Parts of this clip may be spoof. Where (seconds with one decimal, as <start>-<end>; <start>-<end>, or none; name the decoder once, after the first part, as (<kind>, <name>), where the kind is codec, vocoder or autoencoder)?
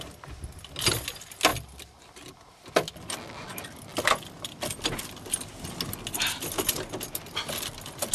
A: 1.5-5.0 (vocoder, BigVGAN v2)